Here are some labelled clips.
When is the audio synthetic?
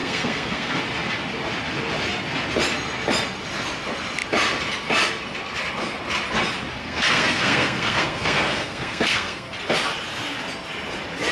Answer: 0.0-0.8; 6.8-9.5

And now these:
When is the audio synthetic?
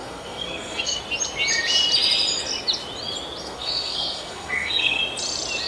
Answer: 0.0-1.0; 3.4-5.0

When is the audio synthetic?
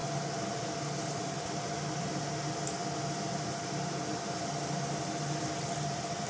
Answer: none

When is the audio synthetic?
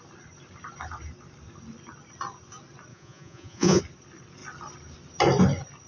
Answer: 2.9-3.8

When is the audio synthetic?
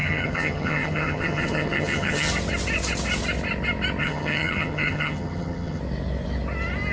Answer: 0.0-2.3; 4.0-5.8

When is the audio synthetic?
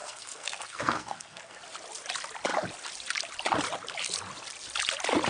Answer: 0.0-1.6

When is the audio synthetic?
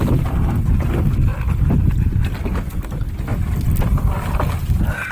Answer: none